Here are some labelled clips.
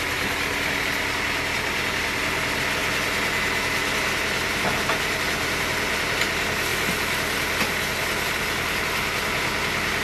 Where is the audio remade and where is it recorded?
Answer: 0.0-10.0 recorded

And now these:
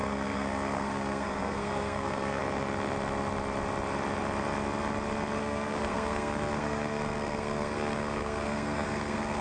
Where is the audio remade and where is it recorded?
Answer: 0.0-2.4 remade; 2.4-5.4 recorded; 5.4-9.4 remade

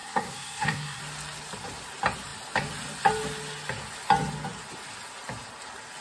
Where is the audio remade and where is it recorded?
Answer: 0.0-1.0 remade; 1.0-6.0 recorded

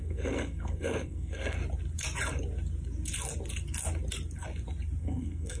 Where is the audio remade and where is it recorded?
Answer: 0.0-1.6 remade; 1.6-5.0 recorded; 5.0-5.6 remade